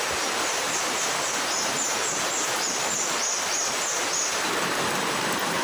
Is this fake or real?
fake